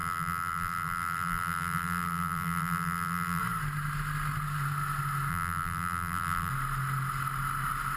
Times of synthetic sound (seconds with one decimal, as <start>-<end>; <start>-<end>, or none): 0.0-3.4; 5.3-6.5